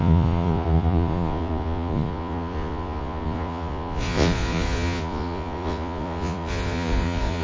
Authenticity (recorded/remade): remade